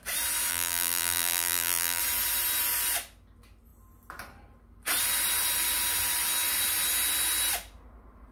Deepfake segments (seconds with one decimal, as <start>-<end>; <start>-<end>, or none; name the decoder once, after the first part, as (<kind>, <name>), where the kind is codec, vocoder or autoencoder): 0.5-2.0 (vocoder, BigVGAN v2)